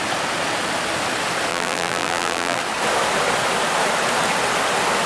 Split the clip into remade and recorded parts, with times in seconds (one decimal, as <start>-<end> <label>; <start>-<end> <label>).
0.0-1.5 recorded; 1.5-2.6 remade; 2.6-5.1 recorded